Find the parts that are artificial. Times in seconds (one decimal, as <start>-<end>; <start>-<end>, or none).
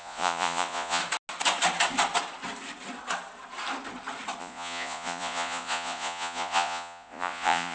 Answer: 0.0-1.0; 4.4-7.7